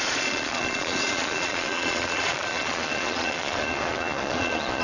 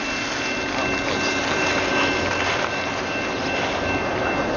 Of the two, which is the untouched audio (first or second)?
second